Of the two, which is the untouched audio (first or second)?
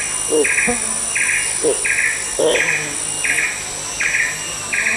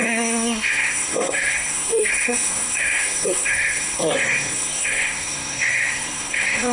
first